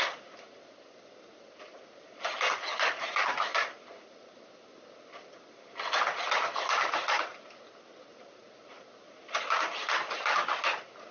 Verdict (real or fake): real